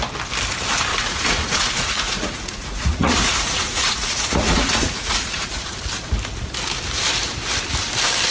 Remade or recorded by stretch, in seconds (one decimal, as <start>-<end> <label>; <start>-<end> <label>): 0.0-0.9 recorded; 0.9-5.8 remade; 5.8-8.3 recorded